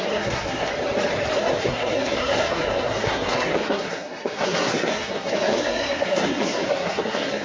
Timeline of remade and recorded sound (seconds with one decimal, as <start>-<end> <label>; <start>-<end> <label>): 0.0-0.7 remade; 0.7-1.4 recorded; 1.4-7.4 remade